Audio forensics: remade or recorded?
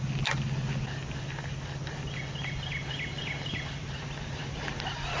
recorded